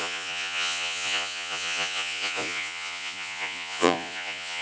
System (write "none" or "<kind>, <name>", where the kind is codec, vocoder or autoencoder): vocoder, Vocos